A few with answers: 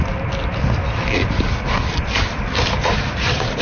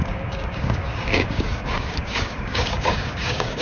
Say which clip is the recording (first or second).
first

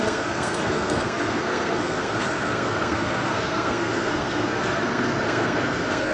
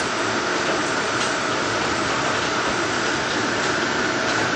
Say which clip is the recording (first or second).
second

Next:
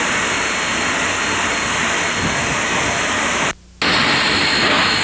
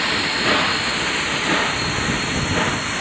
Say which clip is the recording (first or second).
first